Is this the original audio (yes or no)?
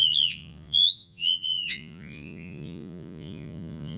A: no